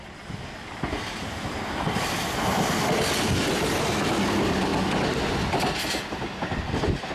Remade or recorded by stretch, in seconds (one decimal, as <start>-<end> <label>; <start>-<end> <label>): 0.0-7.1 recorded